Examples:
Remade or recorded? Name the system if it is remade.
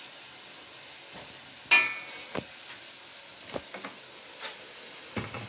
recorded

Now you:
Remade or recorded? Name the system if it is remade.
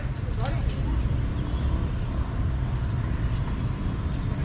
recorded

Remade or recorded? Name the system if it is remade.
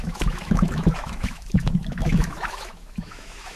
remade, autoencoder, DAC-VAE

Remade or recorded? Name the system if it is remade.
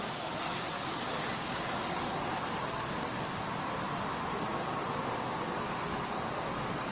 recorded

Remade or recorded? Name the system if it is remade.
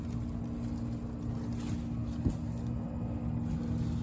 recorded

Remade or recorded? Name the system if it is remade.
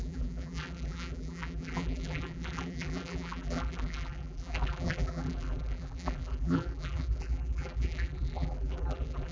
remade, vocoder, BigVGAN v2